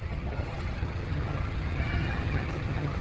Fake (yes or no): yes